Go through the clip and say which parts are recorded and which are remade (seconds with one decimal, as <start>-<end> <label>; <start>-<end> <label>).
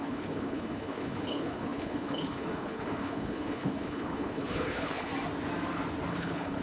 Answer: 0.0-5.1 remade; 5.1-6.1 recorded; 6.1-6.6 remade